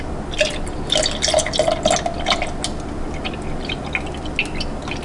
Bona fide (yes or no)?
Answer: yes